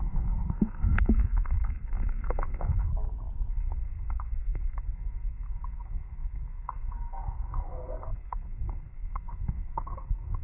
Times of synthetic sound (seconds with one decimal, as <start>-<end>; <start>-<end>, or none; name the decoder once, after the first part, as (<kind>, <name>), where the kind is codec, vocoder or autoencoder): 0.0-2.9 (codec, SNAC); 3.5-10.4